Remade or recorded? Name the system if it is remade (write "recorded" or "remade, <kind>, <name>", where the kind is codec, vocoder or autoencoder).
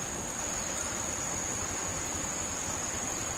recorded